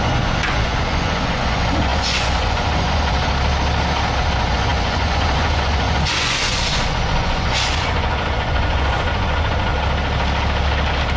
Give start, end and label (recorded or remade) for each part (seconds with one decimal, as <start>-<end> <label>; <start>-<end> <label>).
0.0-3.3 remade; 3.3-4.2 recorded; 4.2-9.7 remade; 9.7-11.2 recorded